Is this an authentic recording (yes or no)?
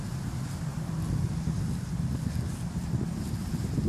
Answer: yes